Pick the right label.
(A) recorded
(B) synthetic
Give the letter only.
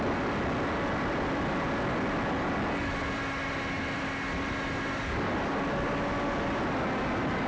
A